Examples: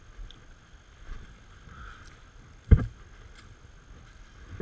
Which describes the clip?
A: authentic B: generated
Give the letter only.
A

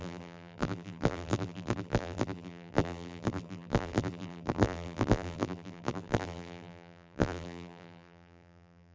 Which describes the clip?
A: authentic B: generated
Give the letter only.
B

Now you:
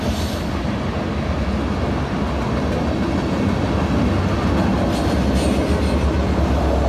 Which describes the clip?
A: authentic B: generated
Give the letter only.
A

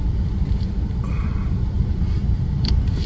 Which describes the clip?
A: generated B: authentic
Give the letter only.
A